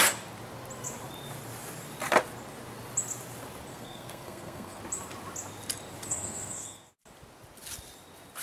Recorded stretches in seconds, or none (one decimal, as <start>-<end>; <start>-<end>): 0.0-3.7; 4.8-6.1; 6.9-8.4